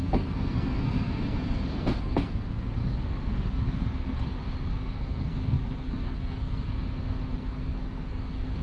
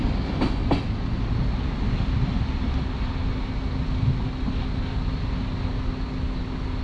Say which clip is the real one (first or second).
second